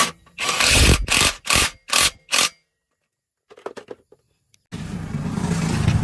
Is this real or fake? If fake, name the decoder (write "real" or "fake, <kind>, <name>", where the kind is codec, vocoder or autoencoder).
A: real